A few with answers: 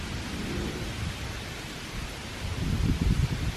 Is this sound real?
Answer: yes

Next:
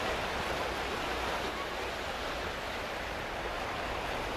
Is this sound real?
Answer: yes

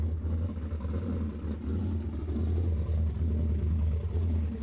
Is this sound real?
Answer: yes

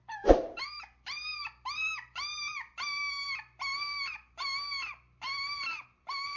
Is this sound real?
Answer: no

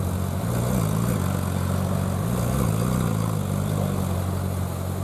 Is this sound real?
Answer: yes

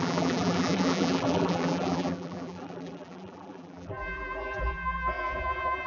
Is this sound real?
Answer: no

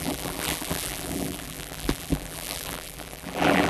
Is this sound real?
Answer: no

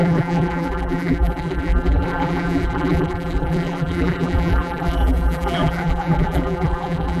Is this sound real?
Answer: no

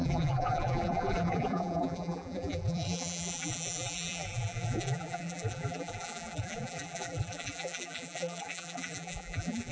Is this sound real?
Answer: no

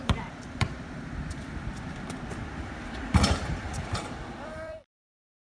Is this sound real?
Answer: no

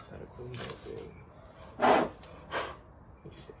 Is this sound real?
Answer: yes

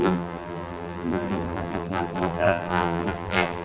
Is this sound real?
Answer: no